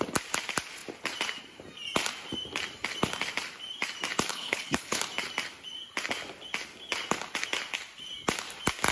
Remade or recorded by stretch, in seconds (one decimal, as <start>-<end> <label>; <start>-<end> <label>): 0.0-4.3 recorded; 4.3-5.0 remade; 5.0-8.9 recorded